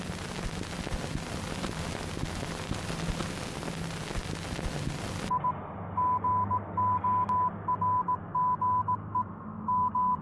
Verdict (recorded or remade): recorded